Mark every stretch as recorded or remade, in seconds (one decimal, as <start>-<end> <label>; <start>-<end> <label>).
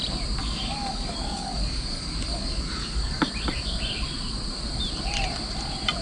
0.0-0.4 recorded; 0.4-3.2 remade; 3.2-6.0 recorded